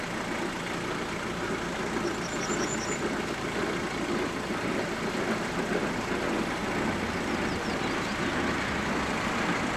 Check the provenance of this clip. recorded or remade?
recorded